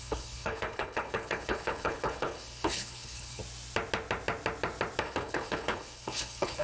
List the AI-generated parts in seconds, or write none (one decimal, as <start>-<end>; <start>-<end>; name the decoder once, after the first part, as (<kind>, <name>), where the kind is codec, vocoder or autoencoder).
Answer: 0.0-3.4 (codec, HILCodec); 5.0-6.6